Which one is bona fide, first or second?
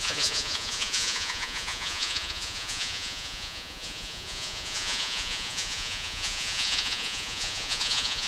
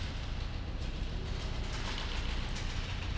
second